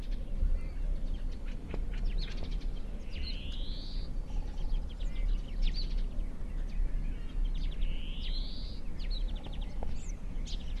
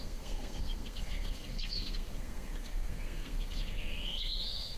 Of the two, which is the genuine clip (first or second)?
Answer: first